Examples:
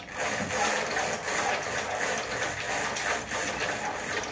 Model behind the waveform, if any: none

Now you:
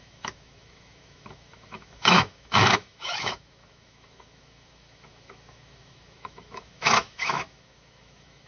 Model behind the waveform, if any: autoencoder, DAC-VAE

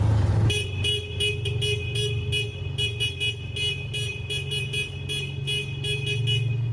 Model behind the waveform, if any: none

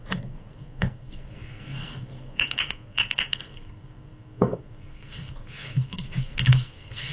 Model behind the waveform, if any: codec, SNAC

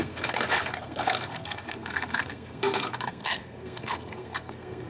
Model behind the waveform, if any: codec, SNAC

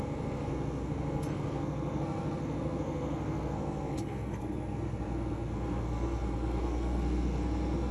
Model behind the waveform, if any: codec, SNAC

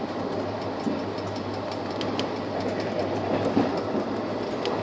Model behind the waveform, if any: none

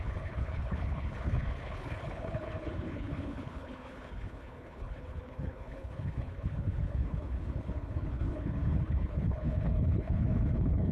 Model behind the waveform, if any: codec, HILCodec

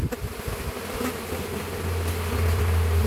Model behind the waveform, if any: none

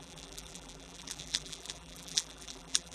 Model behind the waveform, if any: vocoder, BigVGAN v2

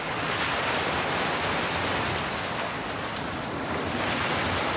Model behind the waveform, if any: none